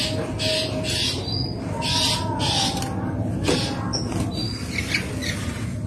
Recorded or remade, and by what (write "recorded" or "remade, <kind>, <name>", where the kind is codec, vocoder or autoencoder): recorded